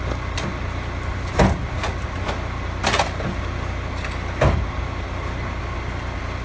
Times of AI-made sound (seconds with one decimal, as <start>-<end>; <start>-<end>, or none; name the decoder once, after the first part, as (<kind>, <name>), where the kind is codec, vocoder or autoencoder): none